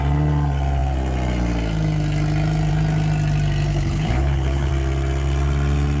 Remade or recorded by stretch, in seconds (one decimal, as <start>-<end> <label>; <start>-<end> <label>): 0.0-3.7 recorded; 3.7-4.7 remade; 4.7-6.0 recorded